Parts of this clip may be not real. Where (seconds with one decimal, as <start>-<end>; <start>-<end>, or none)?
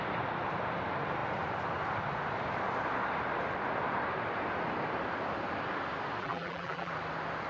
6.2-6.9